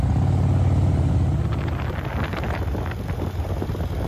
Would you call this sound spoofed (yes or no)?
no